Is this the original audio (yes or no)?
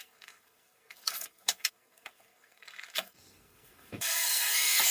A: no